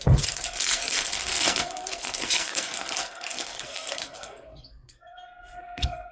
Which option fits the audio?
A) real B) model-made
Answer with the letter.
B